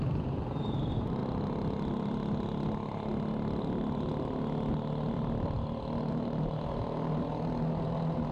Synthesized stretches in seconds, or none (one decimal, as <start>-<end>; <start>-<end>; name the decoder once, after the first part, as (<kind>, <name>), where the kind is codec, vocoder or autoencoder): 0.0-1.2 (vocoder, BigVGAN v2); 6.1-8.3